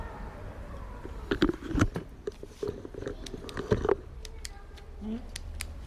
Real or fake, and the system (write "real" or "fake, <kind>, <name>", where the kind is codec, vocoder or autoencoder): fake, vocoder, BigVGAN v2